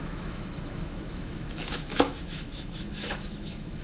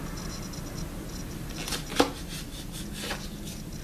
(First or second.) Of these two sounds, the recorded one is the second